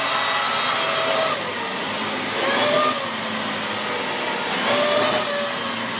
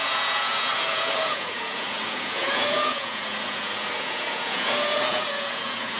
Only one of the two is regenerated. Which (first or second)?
second